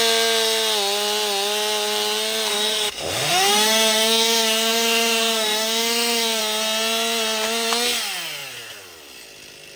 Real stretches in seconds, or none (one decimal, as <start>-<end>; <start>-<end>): 0.0-2.5; 6.4-9.8